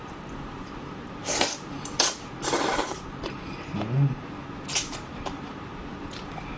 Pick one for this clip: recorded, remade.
remade